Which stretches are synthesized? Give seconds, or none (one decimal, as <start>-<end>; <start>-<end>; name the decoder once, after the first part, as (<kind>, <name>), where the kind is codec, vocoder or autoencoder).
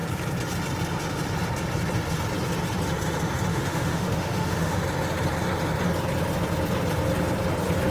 3.5-4.8 (autoencoder, DAC-VAE)